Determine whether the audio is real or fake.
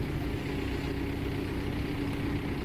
real